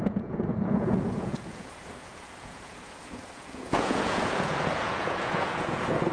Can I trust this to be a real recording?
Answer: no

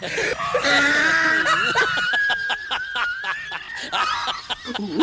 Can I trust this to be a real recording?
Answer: yes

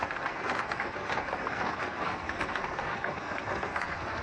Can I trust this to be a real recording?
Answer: no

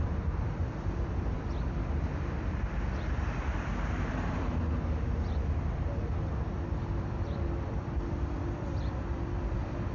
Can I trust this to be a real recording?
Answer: no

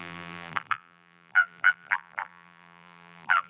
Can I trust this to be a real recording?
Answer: no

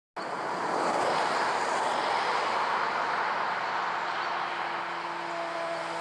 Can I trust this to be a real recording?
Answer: yes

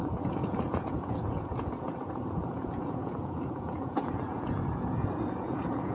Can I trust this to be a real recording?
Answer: no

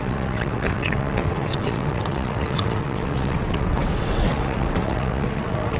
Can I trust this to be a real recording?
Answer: no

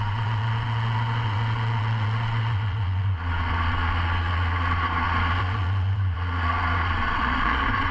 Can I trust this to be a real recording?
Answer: no